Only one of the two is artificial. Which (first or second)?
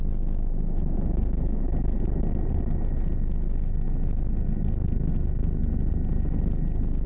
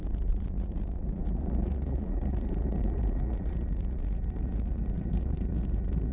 second